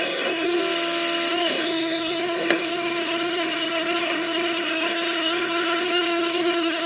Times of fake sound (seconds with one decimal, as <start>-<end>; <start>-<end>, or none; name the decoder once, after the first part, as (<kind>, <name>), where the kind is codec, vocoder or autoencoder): 0.0-0.6 (codec, SNAC); 1.3-6.9

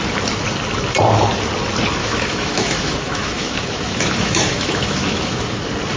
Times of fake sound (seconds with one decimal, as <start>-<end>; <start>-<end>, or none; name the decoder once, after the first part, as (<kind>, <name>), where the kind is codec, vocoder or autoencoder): 2.0-5.6 (autoencoder, DAC-VAE)

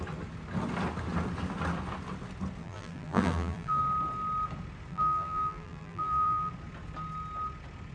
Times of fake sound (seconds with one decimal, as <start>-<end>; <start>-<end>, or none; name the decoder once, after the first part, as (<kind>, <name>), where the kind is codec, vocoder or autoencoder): 2.6-3.8 (vocoder, BigVGAN v2); 4.9-6.5

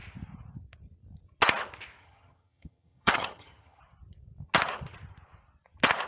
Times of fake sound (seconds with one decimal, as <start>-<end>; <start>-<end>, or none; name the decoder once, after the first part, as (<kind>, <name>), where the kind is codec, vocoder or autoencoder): 2.0-3.8 (vocoder, HiFi-GAN)

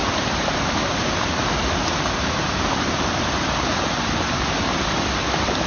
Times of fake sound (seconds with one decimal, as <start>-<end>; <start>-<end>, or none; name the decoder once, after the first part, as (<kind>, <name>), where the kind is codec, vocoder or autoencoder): 0.0-3.0 (vocoder, BigVGAN v2)

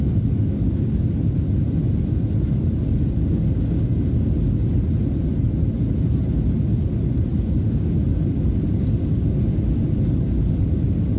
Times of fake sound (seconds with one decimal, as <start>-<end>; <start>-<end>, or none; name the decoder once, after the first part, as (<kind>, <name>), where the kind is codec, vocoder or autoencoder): none

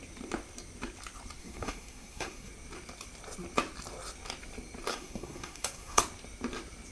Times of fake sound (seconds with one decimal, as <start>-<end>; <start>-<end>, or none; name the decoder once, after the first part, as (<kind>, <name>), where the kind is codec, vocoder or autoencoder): 1.4-2.5 (codec, SNAC); 4.9-6.0

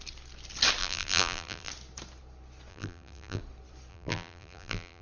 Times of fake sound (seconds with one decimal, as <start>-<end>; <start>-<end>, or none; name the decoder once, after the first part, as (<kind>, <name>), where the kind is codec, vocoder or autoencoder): 0.8-1.7 (vocoder, BigVGAN v2); 2.7-3.4; 3.9-5.0